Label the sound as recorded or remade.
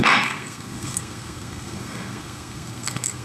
remade